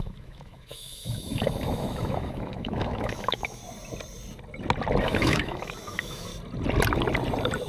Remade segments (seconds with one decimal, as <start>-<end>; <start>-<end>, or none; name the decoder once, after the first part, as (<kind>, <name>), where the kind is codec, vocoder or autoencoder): 0.0-3.6 (autoencoder, DAC-VAE); 5.0-6.3